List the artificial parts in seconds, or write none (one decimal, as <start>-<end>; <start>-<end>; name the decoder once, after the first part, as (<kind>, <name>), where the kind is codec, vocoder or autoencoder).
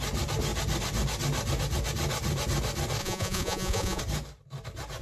3.0-4.0 (vocoder, Vocos)